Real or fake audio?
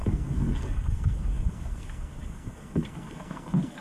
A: fake